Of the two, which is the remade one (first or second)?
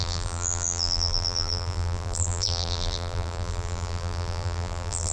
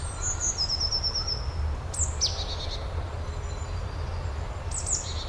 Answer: first